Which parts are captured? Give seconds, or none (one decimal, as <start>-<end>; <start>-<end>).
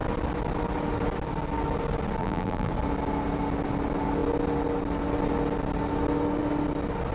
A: 0.0-2.2; 2.7-7.1